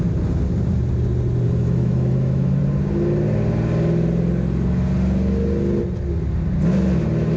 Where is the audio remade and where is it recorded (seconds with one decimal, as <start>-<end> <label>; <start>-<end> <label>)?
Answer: 0.0-1.6 recorded; 1.6-2.6 remade; 2.6-7.4 recorded